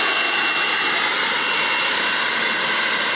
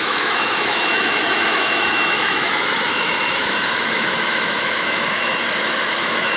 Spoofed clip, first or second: second